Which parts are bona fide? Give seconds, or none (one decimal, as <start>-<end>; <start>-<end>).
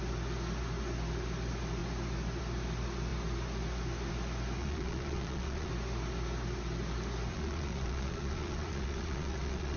0.0-4.6; 5.7-7.3